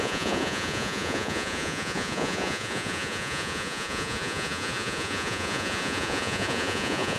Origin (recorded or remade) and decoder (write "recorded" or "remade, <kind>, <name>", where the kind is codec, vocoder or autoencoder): remade, vocoder, Vocos